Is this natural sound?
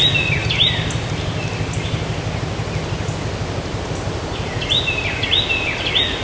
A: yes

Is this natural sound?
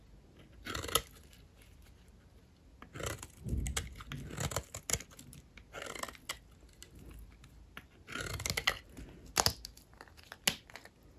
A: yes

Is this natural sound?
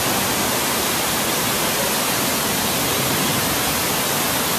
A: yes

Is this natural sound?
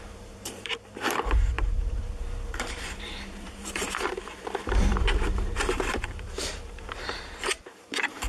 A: no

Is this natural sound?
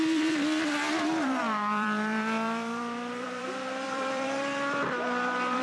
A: no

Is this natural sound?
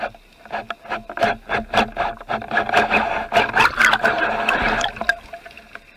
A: yes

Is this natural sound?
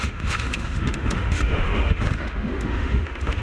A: no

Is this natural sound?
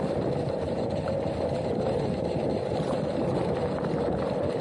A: no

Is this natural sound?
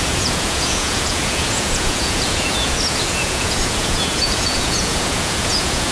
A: no